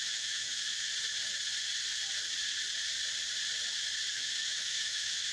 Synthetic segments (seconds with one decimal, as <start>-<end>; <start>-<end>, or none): 0.0-0.9; 4.1-5.3